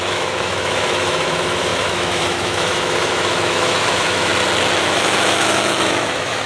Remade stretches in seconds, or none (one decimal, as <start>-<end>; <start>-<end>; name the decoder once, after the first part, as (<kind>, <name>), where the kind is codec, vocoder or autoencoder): 0.0-4.3 (autoencoder, DAC-VAE); 4.8-6.5